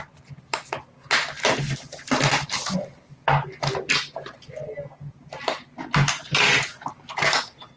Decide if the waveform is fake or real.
real